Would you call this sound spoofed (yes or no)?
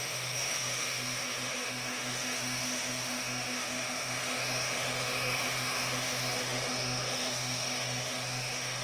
yes